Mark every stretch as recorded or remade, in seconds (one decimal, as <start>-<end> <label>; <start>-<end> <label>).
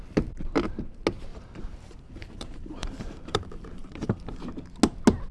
0.0-1.3 recorded; 1.3-4.5 remade; 4.5-5.3 recorded